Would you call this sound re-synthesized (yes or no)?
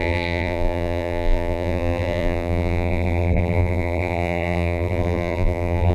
yes